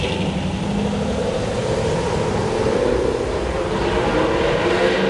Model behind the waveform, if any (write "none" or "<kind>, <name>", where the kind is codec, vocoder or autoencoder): none